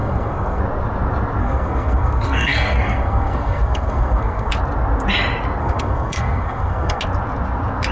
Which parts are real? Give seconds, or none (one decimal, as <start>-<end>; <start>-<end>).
0.6-1.4; 4.5-5.6; 7.0-7.9